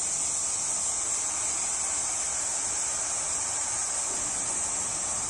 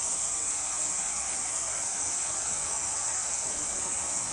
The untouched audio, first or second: first